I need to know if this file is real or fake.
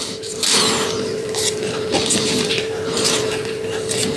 fake